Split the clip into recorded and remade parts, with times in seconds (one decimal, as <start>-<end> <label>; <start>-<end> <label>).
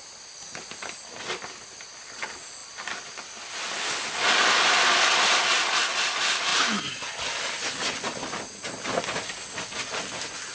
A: 0.0-10.5 recorded